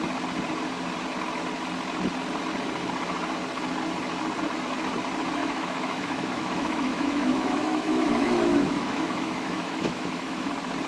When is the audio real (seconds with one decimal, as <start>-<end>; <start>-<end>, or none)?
0.0-5.4; 10.5-10.9